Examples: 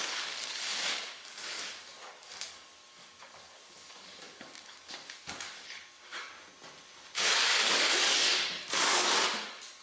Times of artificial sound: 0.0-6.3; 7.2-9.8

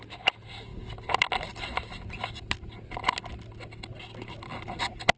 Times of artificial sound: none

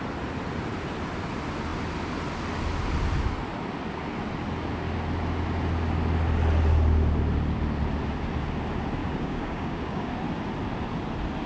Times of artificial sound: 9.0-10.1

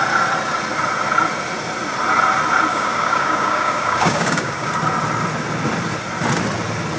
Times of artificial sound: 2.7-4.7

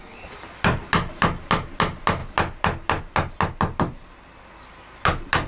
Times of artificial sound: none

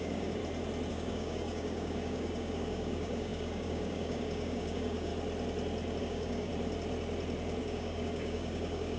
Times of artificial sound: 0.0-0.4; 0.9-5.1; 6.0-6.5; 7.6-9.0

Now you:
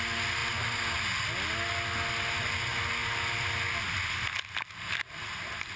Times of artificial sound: none